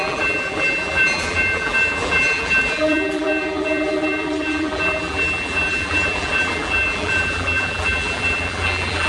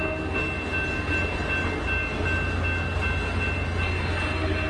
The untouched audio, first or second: second